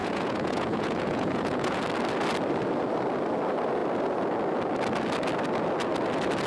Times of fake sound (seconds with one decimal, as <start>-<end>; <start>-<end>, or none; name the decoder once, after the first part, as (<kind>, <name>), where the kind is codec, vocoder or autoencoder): 0.0-1.8 (vocoder, Vocos)